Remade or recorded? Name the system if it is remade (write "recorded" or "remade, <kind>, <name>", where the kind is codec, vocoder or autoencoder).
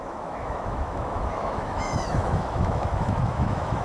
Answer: remade, autoencoder, DAC-VAE